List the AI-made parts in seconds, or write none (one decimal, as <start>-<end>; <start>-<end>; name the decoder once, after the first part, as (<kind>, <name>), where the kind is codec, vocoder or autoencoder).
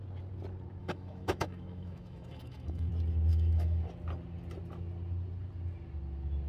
0.8-2.9 (autoencoder, DAC-VAE); 3.3-3.8